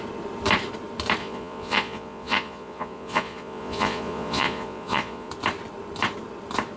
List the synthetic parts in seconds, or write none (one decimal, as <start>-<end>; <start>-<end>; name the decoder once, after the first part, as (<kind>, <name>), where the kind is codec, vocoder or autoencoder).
1.2-5.3 (vocoder, Vocos)